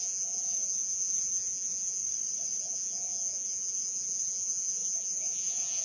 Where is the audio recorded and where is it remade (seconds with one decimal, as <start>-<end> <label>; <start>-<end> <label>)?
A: 0.0-2.0 remade; 2.0-2.6 recorded; 2.6-5.8 remade